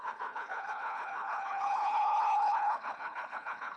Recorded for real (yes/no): no